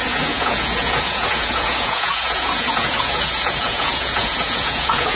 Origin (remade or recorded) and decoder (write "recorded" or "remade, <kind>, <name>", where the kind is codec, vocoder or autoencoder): remade, vocoder, Vocos